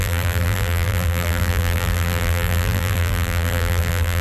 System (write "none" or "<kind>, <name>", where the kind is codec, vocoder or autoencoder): vocoder, BigVGAN v2